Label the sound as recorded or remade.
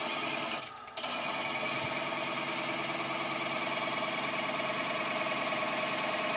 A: recorded